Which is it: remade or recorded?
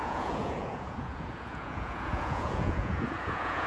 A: remade